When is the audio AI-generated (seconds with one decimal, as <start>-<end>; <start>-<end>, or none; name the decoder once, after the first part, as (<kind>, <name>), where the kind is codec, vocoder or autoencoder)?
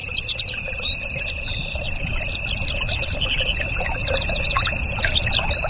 0.0-3.3 (vocoder, BigVGAN v2); 5.0-5.7